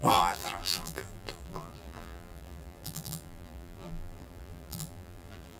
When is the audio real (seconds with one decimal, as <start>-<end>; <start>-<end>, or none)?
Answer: none